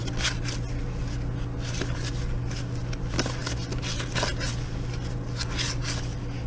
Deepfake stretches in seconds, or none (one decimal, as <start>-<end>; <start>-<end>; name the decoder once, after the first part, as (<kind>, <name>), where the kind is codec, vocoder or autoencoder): none